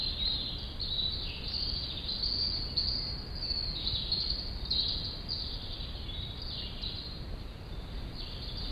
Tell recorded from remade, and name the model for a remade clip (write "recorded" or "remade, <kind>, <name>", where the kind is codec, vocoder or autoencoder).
recorded